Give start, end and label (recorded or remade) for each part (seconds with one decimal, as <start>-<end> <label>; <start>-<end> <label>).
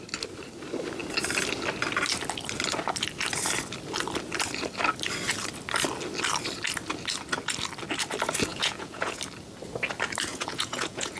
0.0-8.5 recorded; 8.5-9.2 remade; 9.2-10.3 recorded; 10.3-11.2 remade